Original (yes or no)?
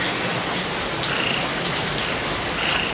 yes